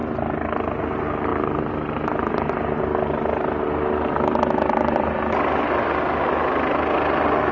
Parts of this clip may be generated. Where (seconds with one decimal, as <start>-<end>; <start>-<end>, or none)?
none